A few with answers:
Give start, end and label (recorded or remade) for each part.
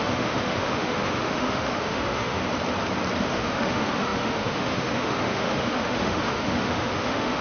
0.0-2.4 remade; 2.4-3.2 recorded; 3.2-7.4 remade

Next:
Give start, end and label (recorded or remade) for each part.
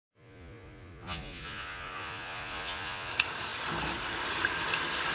0.0-3.1 remade; 3.1-5.1 recorded